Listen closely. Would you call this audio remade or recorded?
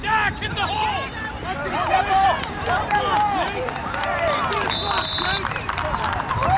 remade